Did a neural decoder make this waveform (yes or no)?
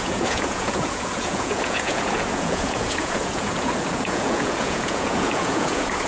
yes